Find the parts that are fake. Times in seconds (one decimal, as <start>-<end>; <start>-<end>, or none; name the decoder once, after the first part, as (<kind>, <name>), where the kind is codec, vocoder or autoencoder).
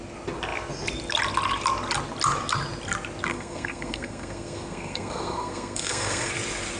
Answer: 3.3-6.3 (codec, SNAC)